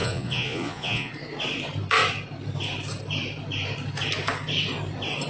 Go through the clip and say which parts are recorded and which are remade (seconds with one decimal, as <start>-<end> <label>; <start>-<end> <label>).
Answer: 0.0-1.1 remade; 1.1-5.3 recorded